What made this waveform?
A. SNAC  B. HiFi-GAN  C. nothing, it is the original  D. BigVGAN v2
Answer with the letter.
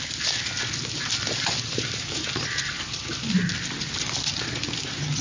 C